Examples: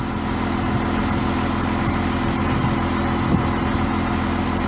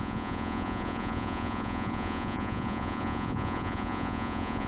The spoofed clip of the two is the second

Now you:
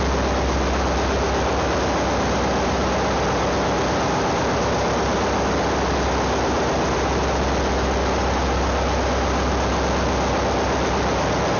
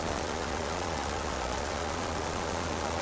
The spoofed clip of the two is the second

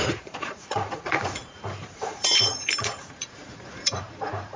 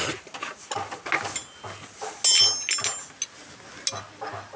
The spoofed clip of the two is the first